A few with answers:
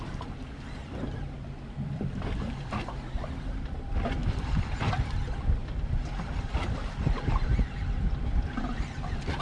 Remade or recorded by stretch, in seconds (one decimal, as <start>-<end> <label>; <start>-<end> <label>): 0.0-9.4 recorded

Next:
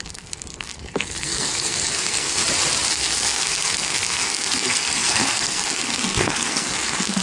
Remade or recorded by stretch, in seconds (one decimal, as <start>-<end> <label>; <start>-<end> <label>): 0.0-2.4 remade; 2.4-2.9 recorded; 2.9-7.2 remade

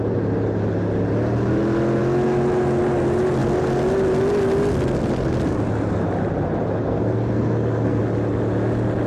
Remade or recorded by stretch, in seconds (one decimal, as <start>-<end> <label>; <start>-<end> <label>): 0.0-6.8 recorded; 6.8-8.0 remade; 8.0-9.1 recorded

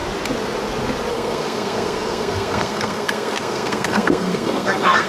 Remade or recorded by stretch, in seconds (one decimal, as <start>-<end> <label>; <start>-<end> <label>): 0.0-1.1 recorded; 1.1-5.1 remade